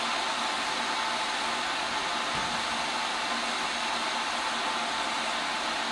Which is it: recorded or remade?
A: recorded